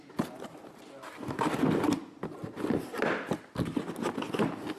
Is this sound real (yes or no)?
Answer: yes